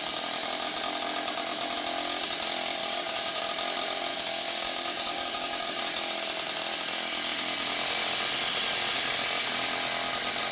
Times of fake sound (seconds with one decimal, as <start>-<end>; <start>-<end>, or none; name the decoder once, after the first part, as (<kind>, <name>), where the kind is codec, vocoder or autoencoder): 2.8-3.4 (codec, DAC); 4.1-5.8